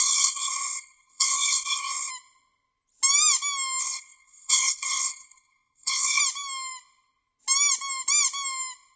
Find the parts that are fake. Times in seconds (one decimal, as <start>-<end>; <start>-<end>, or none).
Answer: 0.0-2.1; 3.8-6.2